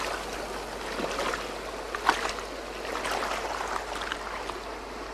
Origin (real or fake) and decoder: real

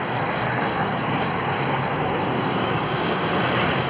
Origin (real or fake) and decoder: fake, codec, DAC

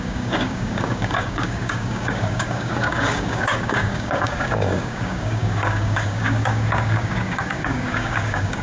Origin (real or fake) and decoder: fake, codec, DAC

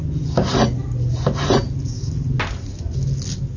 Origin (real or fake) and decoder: real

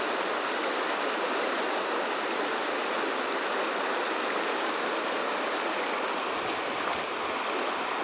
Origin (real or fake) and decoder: real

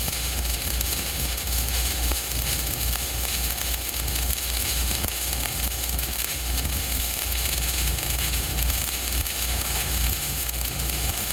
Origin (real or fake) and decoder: fake, autoencoder, DAC-VAE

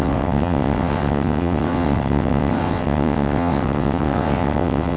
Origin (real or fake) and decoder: fake, vocoder, WaveNeXt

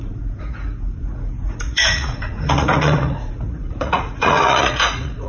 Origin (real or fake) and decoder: fake, vocoder, Vocos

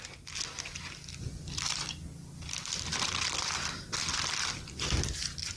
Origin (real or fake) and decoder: fake, vocoder, BigVGAN v2